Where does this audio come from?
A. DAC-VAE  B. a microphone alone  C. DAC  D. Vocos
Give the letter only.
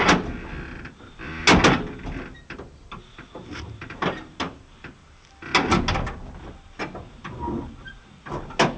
B